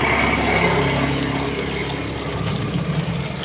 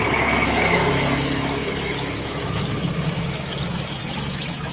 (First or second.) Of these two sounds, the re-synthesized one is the second